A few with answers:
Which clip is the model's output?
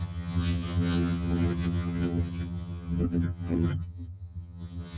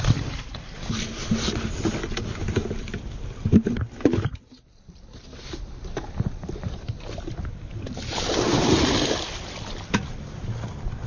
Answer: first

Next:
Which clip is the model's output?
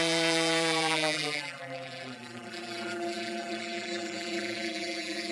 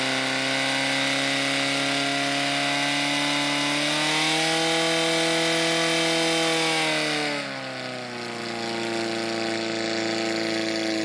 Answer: first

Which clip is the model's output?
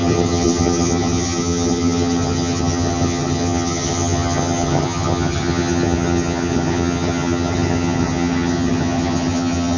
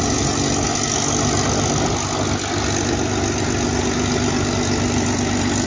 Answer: first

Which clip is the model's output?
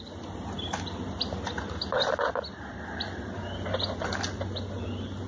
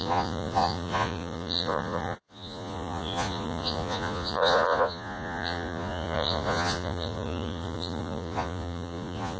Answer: second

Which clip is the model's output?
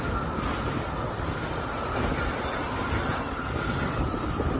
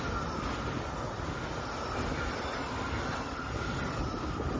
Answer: first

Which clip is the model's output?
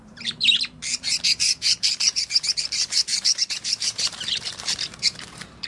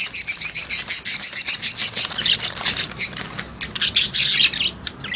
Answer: first